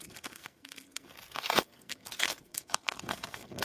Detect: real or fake fake